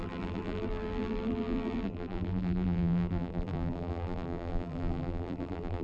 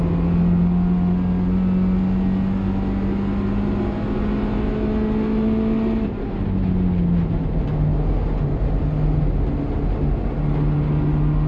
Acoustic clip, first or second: second